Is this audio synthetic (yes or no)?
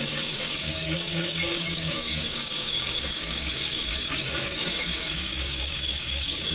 yes